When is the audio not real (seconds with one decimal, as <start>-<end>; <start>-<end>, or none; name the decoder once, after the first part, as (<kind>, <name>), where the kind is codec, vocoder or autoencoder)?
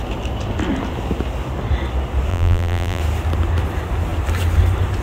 2.3-3.0 (vocoder, BigVGAN v2)